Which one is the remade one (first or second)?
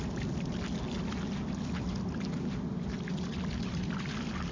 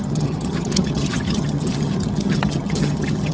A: second